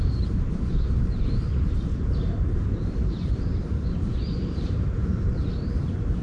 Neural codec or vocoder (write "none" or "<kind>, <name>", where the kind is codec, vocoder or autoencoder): vocoder, BigVGAN v2